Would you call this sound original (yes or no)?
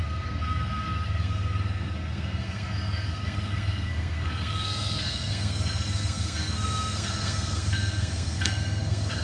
no